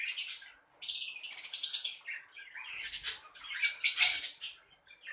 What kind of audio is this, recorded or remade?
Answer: recorded